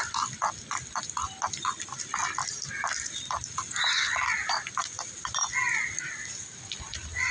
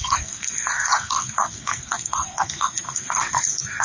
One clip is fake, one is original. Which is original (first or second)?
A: first